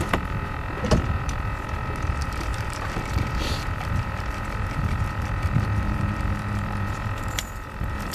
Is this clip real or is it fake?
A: fake